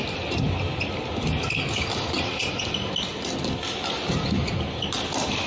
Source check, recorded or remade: recorded